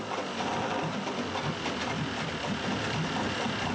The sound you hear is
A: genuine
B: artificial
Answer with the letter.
A